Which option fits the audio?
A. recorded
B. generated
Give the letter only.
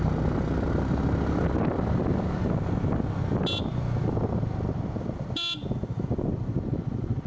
A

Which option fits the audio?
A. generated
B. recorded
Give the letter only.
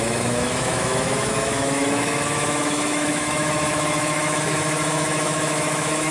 A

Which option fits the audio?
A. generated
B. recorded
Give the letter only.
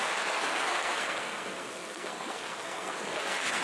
A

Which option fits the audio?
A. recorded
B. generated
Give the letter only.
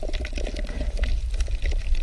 A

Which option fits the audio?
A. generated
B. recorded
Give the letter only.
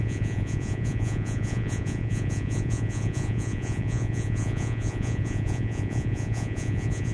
A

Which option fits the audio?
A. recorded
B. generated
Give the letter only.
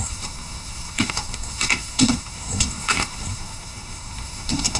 B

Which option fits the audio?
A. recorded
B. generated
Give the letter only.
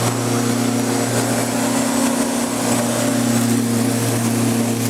A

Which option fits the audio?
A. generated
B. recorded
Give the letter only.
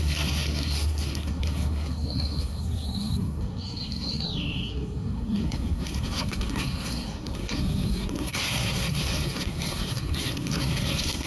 A